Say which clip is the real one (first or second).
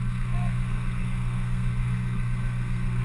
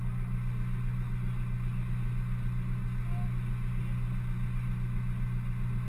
second